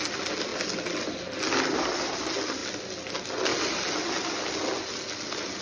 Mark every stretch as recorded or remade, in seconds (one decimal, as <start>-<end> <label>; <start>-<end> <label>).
0.0-5.6 recorded